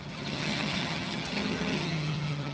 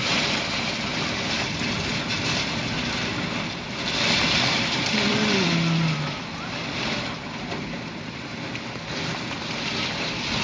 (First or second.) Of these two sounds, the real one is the second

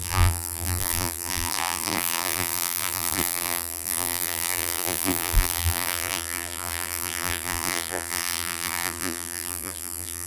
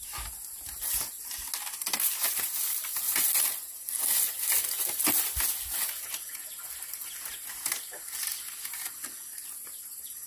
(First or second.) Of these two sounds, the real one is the second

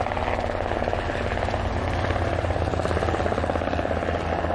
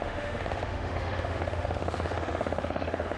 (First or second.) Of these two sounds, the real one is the first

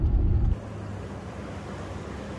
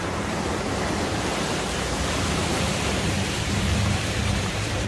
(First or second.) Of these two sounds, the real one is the first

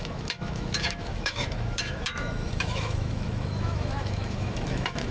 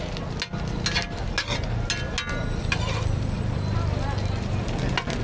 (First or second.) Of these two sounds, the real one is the second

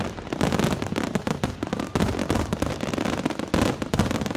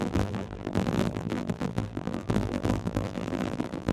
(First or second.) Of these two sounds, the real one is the first